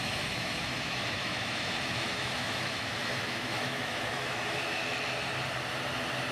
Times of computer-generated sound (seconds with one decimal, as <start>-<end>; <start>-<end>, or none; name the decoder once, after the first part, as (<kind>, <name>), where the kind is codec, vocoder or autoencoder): 0.0-4.8 (autoencoder, DAC-VAE)